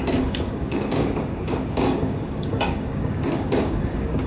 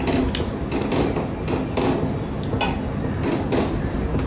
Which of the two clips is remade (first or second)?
first